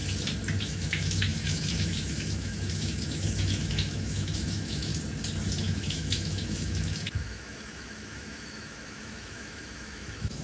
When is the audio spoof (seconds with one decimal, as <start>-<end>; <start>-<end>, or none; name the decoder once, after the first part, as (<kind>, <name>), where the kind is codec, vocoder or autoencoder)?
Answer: 0.6-4.9 (autoencoder, DAC-VAE); 5.6-10.4